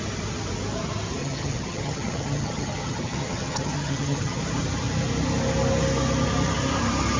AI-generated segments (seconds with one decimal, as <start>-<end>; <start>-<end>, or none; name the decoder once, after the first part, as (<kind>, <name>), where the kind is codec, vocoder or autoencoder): 1.2-4.4 (vocoder, HiFi-GAN)